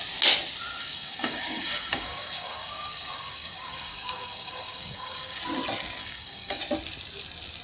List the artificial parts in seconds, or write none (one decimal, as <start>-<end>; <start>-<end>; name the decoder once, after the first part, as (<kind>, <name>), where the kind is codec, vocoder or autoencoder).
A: 0.8-5.4 (codec, DAC); 6.0-6.6